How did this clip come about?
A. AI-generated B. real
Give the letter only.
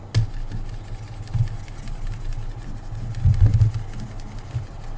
B